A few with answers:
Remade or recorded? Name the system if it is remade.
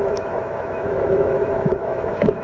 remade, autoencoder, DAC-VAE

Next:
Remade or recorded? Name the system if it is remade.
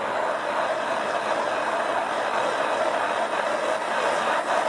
recorded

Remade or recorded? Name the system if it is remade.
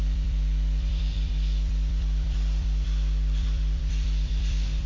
remade, vocoder, BigVGAN v2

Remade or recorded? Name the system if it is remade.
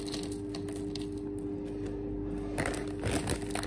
recorded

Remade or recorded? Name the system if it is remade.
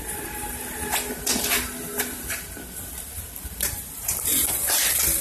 remade, vocoder, BigVGAN v2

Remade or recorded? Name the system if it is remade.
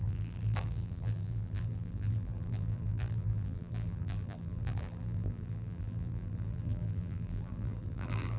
remade, vocoder, BigVGAN v2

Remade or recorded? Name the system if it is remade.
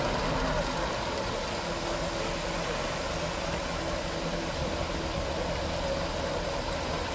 recorded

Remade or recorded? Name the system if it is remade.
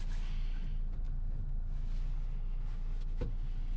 recorded